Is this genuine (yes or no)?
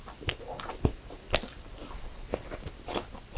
yes